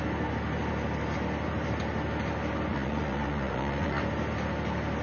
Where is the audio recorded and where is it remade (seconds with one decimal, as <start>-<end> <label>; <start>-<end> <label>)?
0.0-2.7 recorded; 2.7-4.0 remade; 4.0-5.0 recorded